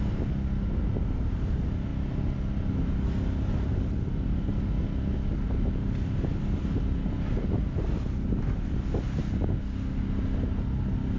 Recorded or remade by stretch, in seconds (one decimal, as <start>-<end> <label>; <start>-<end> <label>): 0.0-11.2 recorded

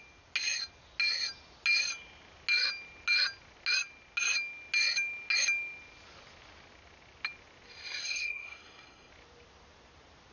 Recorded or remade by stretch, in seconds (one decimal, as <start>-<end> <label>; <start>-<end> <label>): 0.0-8.0 recorded; 8.0-9.1 remade; 9.1-10.3 recorded

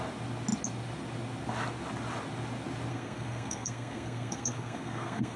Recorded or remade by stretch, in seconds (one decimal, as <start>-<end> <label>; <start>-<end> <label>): 0.0-2.9 recorded; 2.9-5.4 remade

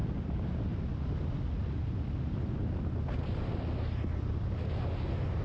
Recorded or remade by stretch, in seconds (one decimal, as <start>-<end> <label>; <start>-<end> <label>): 0.0-5.4 recorded

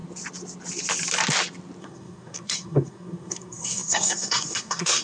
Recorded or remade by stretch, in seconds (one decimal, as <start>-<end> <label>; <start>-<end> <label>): 0.0-1.8 recorded; 1.8-5.0 remade

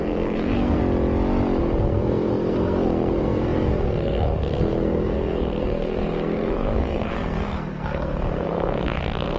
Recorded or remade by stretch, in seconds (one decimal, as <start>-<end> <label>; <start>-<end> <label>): 0.0-0.8 remade; 0.8-1.6 recorded; 1.6-9.4 remade